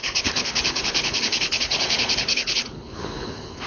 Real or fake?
fake